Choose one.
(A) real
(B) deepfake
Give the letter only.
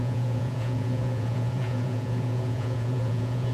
B